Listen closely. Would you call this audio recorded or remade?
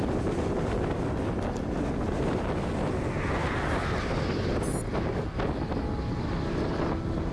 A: recorded